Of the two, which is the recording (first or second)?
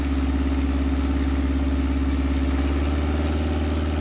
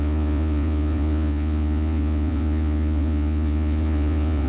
first